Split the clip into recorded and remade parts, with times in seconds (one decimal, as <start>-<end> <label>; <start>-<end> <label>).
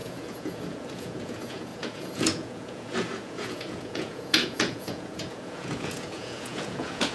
0.0-7.1 remade